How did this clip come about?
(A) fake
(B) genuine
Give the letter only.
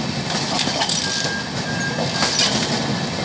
B